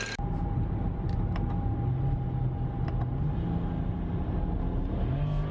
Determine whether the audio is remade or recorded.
recorded